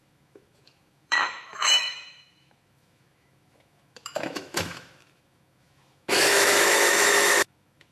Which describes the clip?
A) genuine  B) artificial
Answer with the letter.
B